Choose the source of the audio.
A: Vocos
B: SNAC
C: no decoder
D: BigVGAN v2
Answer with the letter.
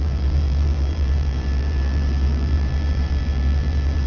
D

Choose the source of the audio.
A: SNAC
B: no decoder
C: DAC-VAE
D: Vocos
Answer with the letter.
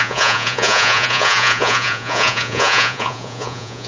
D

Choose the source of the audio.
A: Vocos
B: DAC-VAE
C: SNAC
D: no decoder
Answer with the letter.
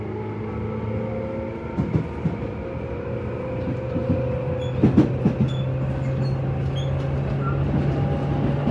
D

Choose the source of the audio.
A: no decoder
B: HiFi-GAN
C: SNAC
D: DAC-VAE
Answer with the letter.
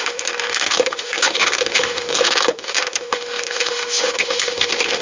D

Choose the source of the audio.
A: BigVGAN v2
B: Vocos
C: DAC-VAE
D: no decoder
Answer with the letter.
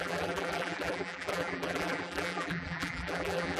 A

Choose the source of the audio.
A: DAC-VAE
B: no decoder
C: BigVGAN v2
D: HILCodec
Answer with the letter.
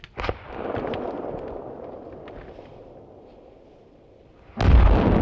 B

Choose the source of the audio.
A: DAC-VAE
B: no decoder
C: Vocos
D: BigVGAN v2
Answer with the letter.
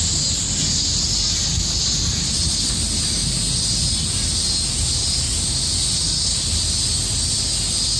B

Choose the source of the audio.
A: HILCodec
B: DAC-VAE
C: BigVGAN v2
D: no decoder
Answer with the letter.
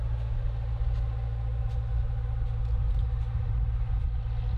D